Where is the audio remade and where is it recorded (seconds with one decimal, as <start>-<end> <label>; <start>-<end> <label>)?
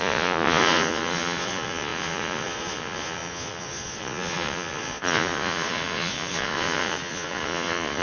0.0-8.0 remade